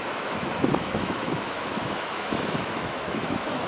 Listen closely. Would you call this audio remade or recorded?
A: remade